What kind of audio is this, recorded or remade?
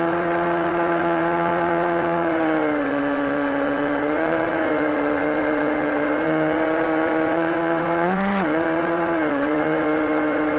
remade